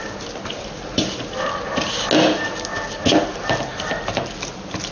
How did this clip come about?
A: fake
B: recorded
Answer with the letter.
B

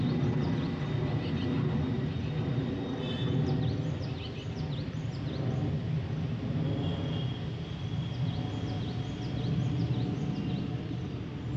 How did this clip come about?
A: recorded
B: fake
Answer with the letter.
A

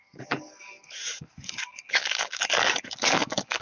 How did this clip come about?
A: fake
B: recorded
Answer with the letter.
A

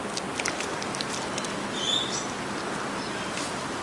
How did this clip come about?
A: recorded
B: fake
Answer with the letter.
A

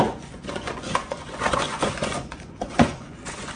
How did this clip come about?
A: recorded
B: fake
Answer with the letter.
B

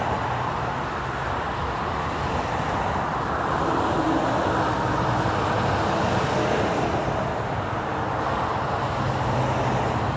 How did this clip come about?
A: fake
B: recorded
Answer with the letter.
B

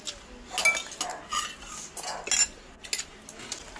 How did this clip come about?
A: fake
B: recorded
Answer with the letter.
B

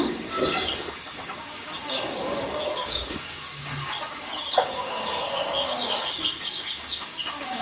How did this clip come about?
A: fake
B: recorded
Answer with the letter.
A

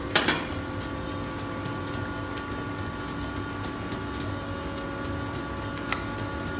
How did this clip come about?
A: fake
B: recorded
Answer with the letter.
B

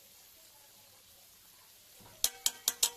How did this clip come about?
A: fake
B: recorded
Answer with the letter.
B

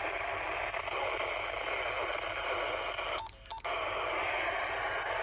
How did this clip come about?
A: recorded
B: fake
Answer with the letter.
A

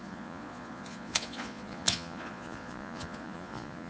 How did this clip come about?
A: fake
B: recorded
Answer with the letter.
A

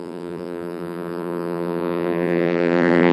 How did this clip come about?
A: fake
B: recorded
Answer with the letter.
A